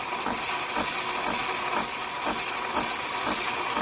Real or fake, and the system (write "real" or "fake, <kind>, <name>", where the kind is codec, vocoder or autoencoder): real